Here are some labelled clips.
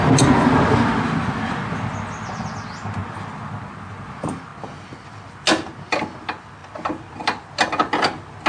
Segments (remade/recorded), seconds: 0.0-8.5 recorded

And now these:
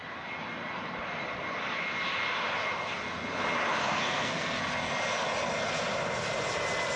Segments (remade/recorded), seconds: 0.0-3.8 recorded; 3.8-4.6 remade; 4.6-7.0 recorded

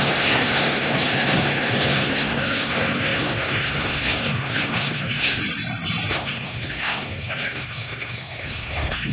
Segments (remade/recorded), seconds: 0.0-5.4 remade; 5.4-6.1 recorded; 6.1-9.1 remade

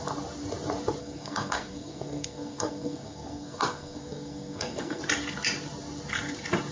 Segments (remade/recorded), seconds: 0.0-1.0 recorded; 1.0-5.0 remade; 5.0-6.7 recorded

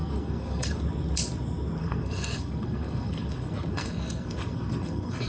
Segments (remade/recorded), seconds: 0.0-0.8 remade; 0.8-1.8 recorded; 1.8-5.3 remade

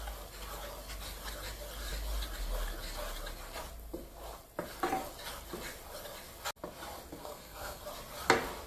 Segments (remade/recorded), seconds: 0.0-7.2 recorded; 7.2-7.8 remade; 7.8-8.7 recorded